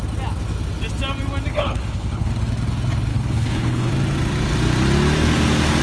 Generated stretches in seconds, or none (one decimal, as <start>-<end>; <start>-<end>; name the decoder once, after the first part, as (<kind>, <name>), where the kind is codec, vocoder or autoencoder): 1.5-2.3 (codec, HILCodec); 3.1-3.9